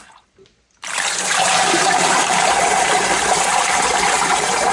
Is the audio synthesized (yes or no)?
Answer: yes